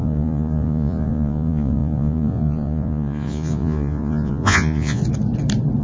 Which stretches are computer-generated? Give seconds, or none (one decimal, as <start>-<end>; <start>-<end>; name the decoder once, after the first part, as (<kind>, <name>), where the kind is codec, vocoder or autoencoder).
0.0-5.0 (vocoder, Vocos)